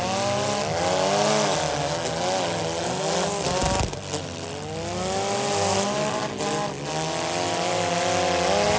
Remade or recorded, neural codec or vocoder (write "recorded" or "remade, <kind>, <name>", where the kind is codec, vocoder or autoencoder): recorded